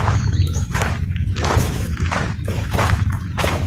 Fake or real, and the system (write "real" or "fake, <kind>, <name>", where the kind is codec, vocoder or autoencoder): fake, autoencoder, DAC-VAE